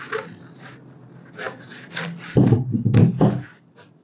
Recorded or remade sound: recorded